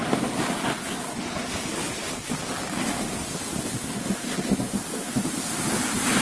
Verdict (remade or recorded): recorded